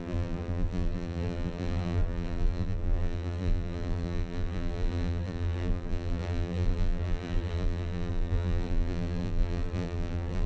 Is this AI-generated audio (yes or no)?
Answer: yes